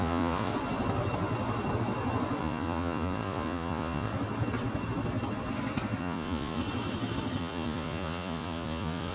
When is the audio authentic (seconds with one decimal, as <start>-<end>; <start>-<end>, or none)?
0.5-2.4; 4.1-6.0; 6.6-7.4